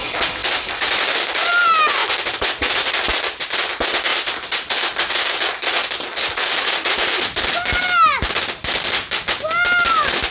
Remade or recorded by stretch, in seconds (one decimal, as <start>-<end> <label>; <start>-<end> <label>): 0.0-0.4 recorded; 0.4-1.5 remade; 1.5-2.0 recorded; 2.0-2.8 remade; 2.8-4.1 recorded; 4.1-4.8 remade; 4.8-10.3 recorded